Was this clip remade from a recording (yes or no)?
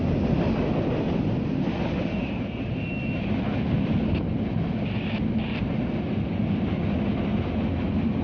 no